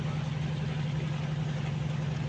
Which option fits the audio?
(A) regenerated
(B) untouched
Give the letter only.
B